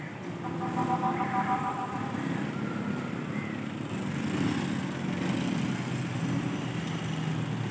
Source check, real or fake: real